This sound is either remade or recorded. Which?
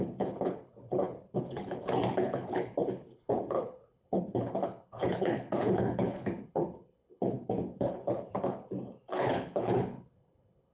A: remade